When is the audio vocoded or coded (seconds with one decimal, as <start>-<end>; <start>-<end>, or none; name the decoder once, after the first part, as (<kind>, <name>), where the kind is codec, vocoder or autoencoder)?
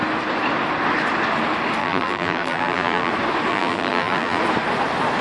1.8-3.1 (vocoder, BigVGAN v2); 3.5-4.4